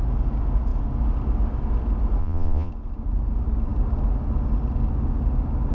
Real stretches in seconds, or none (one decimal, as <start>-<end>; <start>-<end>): 0.0-2.2; 2.7-5.7